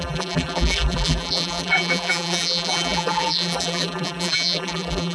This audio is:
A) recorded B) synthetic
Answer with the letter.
B